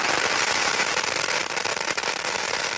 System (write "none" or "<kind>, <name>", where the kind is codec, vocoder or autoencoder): none